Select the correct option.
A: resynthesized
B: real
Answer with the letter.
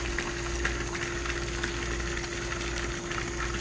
B